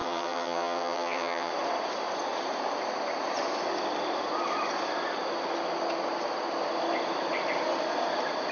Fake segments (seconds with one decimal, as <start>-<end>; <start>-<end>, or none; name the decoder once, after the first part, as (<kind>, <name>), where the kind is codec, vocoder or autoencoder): 0.0-1.5 (vocoder, HiFi-GAN)